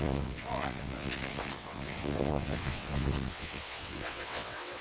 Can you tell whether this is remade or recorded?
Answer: remade